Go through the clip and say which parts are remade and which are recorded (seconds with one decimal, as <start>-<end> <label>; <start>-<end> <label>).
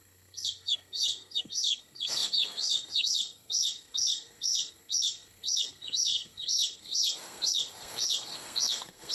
0.0-9.1 remade